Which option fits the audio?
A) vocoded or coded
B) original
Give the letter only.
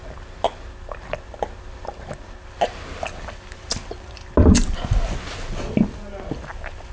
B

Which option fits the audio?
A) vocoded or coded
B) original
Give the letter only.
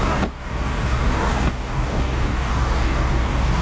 A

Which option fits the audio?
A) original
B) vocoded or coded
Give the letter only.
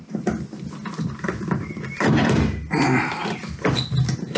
A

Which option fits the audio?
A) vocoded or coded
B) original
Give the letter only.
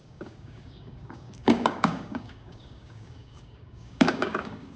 A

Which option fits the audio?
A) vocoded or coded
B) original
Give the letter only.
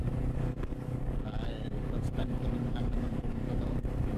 A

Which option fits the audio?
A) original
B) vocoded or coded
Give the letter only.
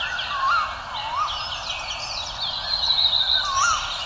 A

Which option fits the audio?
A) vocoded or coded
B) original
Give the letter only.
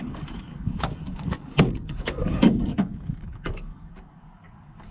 A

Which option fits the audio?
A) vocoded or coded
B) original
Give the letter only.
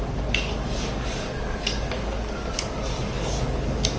A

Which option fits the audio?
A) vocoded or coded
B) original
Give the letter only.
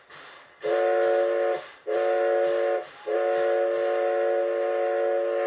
B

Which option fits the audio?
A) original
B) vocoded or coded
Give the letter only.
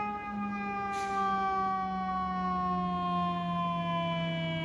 A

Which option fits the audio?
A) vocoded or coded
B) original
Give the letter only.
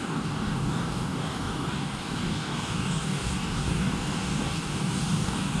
A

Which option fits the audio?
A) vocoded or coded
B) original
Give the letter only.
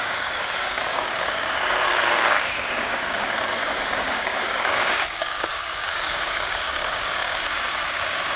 A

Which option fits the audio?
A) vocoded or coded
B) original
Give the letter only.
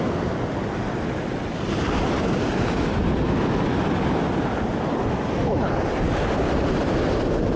B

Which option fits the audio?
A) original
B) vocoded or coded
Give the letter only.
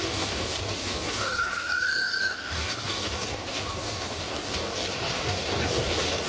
B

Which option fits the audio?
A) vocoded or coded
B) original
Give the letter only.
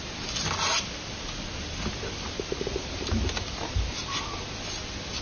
B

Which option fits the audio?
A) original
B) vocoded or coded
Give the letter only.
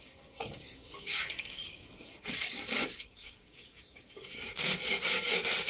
B